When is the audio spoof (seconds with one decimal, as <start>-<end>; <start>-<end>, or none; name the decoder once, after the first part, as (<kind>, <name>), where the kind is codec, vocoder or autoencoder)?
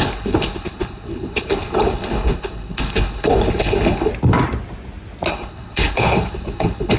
0.0-4.1 (codec, HILCodec); 5.3-7.0